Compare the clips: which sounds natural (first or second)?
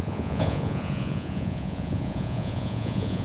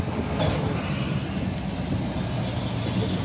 second